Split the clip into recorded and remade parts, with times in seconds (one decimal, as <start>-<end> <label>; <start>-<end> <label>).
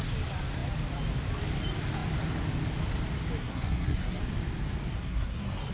0.0-3.4 recorded; 3.4-4.2 remade; 4.2-4.9 recorded; 4.9-5.7 remade